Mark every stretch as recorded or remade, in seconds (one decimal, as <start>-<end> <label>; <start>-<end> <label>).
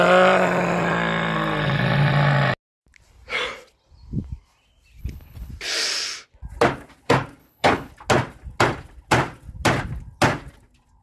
0.0-5.0 recorded; 5.0-5.5 remade; 5.5-7.4 recorded; 7.4-7.9 remade; 7.9-11.0 recorded